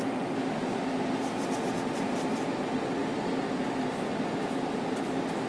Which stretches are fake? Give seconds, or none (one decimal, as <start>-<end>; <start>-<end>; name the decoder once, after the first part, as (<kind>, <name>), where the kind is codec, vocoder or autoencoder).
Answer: none